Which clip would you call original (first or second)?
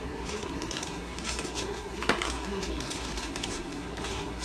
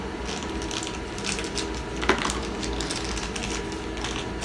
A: second